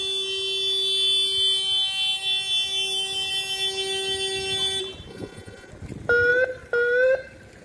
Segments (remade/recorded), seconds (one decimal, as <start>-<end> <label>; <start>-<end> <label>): 0.0-5.1 recorded; 5.1-5.7 remade; 5.7-7.6 recorded